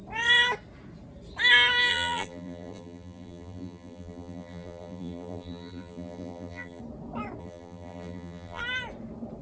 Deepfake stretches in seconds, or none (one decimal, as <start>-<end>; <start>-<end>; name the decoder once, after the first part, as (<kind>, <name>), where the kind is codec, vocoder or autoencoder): 1.9-6.8 (vocoder, BigVGAN v2); 7.4-8.6

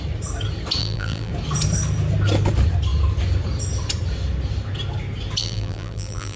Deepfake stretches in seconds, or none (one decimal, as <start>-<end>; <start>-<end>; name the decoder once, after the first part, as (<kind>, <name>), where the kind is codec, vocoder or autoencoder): 0.8-1.3 (vocoder, BigVGAN v2); 5.4-6.4

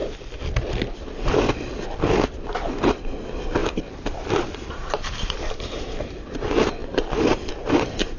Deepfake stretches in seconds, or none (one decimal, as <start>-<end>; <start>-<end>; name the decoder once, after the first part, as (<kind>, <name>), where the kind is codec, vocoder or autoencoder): 3.6-6.3 (vocoder, BigVGAN v2); 6.8-7.5

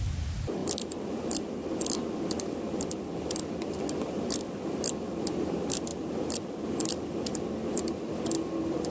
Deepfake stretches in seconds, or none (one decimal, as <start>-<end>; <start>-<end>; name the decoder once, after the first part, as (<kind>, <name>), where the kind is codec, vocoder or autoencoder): 7.6-8.1 (vocoder, BigVGAN v2)

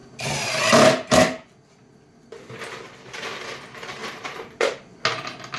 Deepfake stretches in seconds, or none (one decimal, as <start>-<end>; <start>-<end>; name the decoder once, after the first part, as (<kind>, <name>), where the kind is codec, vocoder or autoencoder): 4.0-5.0 (vocoder, BigVGAN v2)

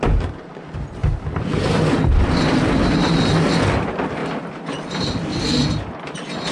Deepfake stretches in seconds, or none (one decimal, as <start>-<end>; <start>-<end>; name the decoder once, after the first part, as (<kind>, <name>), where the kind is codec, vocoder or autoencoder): 1.0-2.0 (vocoder, BigVGAN v2)

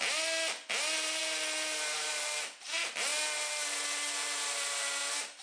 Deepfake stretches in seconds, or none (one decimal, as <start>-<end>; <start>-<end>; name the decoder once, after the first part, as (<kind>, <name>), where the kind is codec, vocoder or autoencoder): none